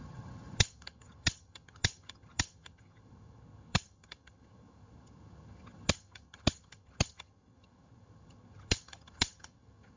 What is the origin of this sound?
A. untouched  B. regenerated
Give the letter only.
B